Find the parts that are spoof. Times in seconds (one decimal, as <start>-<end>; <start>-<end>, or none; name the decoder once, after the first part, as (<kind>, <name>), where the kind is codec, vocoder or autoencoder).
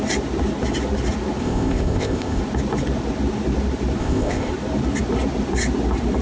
1.4-2.4 (codec, ZipCodec); 4.0-4.5